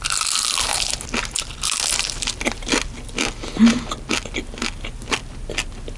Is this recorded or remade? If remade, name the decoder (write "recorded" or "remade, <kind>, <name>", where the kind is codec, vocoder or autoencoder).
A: recorded